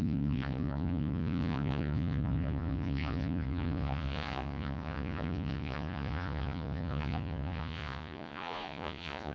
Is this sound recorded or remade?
remade